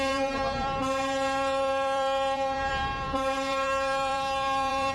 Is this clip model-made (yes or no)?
yes